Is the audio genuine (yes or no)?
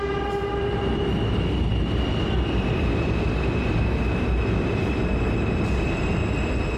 yes